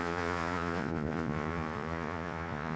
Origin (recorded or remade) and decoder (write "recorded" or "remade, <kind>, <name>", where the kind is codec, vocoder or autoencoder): remade, vocoder, Vocos